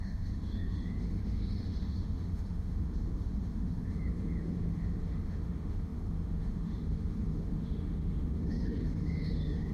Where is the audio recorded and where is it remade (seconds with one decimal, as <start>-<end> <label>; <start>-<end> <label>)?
0.0-9.7 remade